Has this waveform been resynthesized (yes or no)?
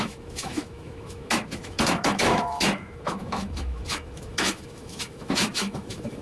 yes